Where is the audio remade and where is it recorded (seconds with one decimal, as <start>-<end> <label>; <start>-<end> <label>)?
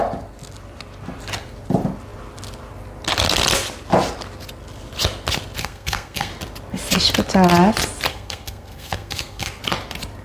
0.0-5.6 recorded; 5.6-6.3 remade; 6.3-8.1 recorded; 8.1-9.6 remade; 9.6-10.2 recorded